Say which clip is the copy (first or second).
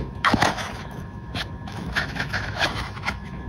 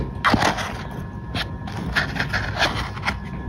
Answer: first